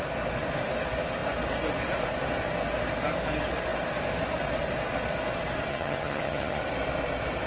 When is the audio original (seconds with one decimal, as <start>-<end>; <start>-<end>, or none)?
0.0-5.7; 6.6-7.5